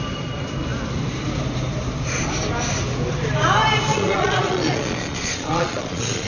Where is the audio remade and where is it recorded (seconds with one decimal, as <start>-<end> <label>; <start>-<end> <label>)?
0.0-3.9 recorded; 3.9-6.3 remade